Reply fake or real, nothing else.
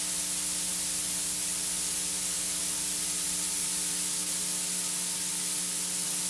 real